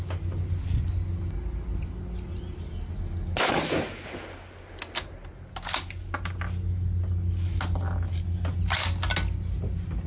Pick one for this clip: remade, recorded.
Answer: recorded